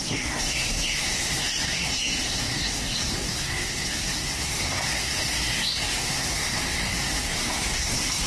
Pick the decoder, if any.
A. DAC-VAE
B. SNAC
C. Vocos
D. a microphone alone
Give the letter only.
B